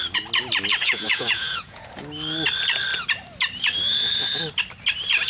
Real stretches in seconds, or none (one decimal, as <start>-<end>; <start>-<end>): 0.0-0.8; 1.9-5.3